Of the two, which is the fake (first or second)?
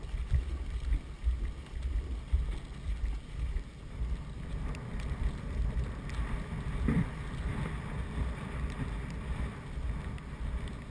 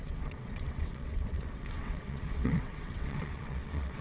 second